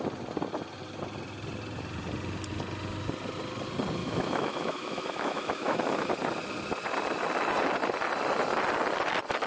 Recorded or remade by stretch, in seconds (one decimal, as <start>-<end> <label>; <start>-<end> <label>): 0.0-4.0 recorded; 4.0-6.1 remade; 6.1-9.5 recorded